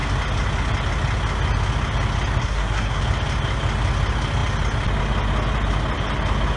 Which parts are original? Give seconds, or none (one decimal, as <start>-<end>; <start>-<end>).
0.0-2.4; 3.0-6.6